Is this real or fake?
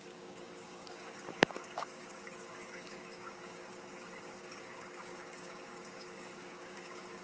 fake